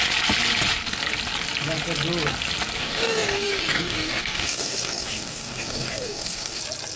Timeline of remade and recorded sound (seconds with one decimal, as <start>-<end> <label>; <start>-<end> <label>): 0.0-2.8 recorded; 2.8-6.6 remade; 6.6-7.0 recorded